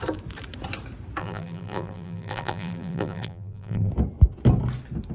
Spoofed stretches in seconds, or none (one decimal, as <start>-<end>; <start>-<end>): 1.2-3.9